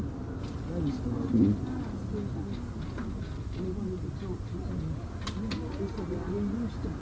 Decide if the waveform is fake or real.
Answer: real